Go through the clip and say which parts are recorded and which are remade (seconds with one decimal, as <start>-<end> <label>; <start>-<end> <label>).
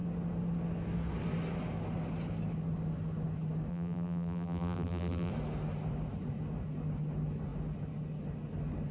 0.0-3.7 recorded; 3.7-5.3 remade; 5.3-8.9 recorded